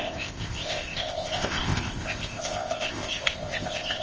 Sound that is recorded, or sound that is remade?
remade